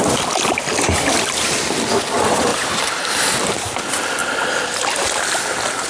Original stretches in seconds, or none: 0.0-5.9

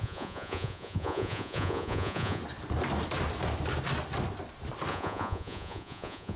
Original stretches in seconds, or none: 2.4-4.9

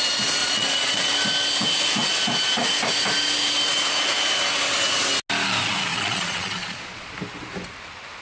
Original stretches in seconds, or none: 0.0-0.4; 1.1-5.9; 7.1-8.2

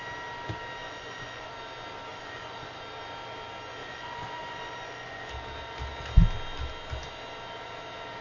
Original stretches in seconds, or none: 0.0-0.8; 1.5-2.1; 2.8-3.8; 5.3-8.2

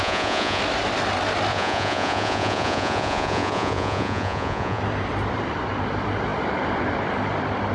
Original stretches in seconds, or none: 0.6-1.5; 4.8-7.7

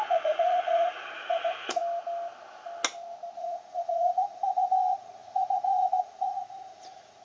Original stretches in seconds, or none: 1.8-3.4

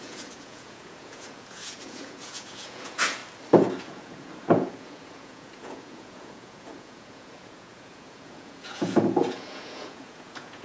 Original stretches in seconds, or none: 3.2-3.8